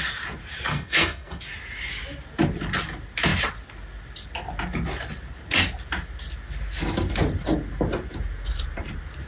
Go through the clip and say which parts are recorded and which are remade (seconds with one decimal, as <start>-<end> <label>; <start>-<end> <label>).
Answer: 0.0-0.7 recorded; 0.7-1.4 remade; 1.4-9.3 recorded